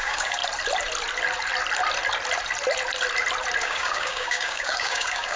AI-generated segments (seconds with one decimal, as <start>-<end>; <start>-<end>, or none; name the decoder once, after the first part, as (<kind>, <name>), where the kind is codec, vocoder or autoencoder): 0.0-0.4 (codec, DAC); 3.6-5.4